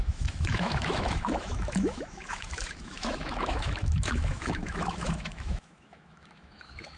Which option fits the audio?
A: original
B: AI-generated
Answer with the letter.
B